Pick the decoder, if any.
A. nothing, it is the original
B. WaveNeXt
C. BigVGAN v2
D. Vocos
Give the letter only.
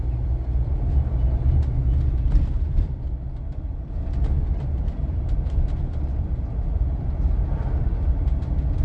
A